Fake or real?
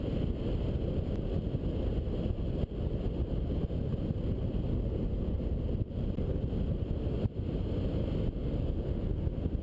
real